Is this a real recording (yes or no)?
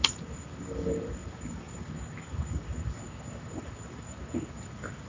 yes